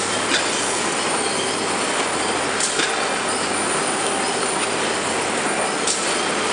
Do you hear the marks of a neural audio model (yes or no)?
no